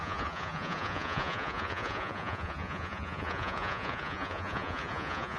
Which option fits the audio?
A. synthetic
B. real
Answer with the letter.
A